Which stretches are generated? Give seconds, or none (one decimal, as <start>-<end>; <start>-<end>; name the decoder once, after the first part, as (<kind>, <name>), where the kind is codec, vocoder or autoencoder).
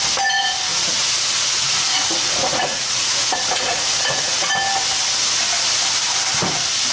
0.7-4.5 (vocoder, Vocos)